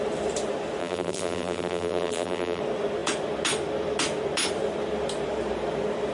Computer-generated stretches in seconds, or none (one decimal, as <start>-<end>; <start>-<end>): 0.8-2.6